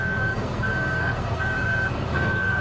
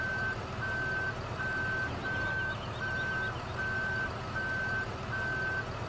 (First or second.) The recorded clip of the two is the second